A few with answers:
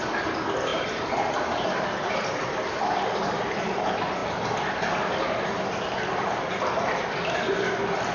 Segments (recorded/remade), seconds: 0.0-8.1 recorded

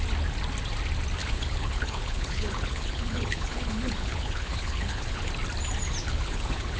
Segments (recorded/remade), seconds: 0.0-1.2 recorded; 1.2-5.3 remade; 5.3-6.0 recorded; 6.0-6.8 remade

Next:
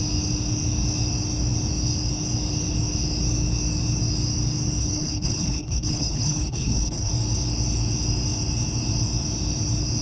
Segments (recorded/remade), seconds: 0.0-4.8 recorded; 4.8-7.1 remade; 7.1-10.0 recorded